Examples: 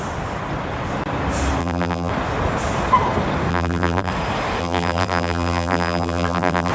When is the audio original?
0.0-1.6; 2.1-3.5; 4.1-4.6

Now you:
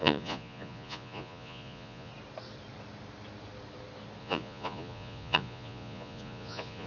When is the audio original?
2.1-4.2

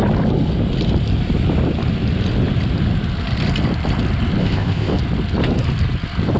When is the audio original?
0.0-4.4; 5.0-6.4

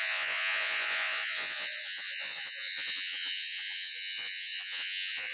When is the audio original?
none

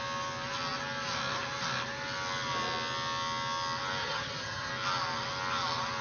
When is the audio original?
0.0-4.0; 4.7-6.0

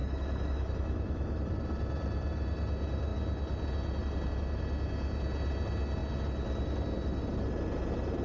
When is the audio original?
1.5-8.2